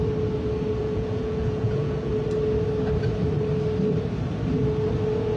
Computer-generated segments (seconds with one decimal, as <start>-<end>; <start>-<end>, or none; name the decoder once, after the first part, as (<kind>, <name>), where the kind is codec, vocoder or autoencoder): 0.8-2.1 (vocoder, Vocos)